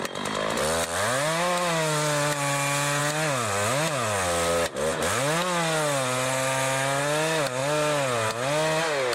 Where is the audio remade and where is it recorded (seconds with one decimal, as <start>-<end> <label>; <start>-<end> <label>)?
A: 0.0-9.1 recorded